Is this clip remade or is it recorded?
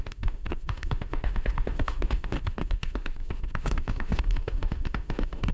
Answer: remade